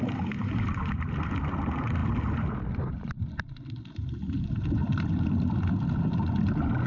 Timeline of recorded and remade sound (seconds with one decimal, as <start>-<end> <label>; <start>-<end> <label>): 0.0-4.8 recorded; 4.8-5.7 remade; 5.7-6.9 recorded